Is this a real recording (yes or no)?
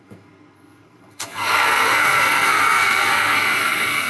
no